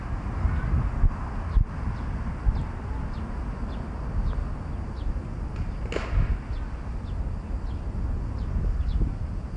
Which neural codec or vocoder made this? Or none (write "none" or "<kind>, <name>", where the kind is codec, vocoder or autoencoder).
none